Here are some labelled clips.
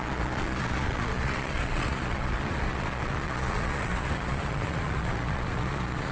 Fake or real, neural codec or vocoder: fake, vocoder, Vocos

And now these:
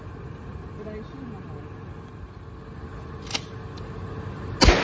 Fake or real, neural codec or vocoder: real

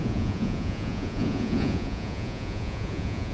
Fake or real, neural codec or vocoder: fake, vocoder, Vocos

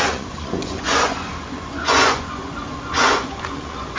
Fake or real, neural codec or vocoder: fake, vocoder, Vocos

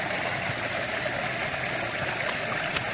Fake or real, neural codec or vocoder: real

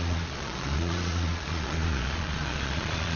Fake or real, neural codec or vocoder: fake, vocoder, Vocos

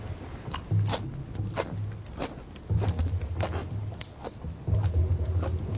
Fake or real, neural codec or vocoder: real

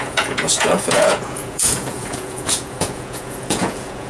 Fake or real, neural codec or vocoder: fake, vocoder, Vocos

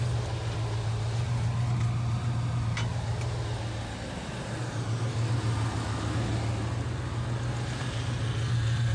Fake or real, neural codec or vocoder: real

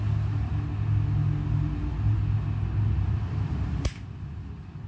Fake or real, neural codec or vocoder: real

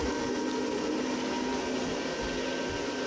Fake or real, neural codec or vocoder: real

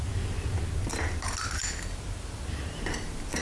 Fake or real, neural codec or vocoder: real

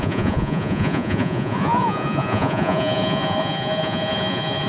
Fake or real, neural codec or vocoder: fake, vocoder, Vocos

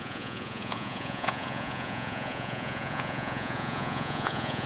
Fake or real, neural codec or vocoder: fake, vocoder, Vocos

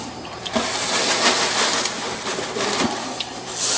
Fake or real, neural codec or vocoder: real